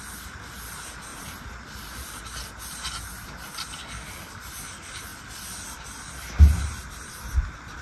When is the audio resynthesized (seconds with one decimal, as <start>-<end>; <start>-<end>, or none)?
3.8-4.4